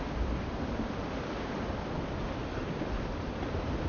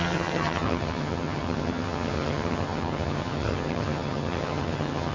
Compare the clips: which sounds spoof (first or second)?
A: second